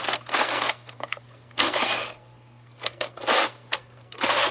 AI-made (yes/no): yes